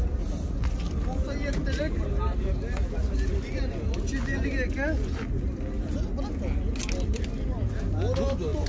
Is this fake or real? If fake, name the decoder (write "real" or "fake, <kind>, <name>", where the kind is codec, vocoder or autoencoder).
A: real